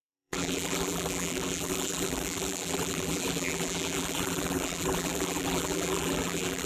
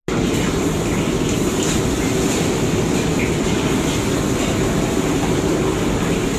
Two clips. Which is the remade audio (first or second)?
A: first